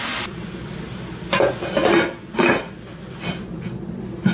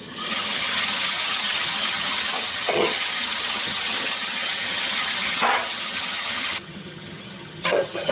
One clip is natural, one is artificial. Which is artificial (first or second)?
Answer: second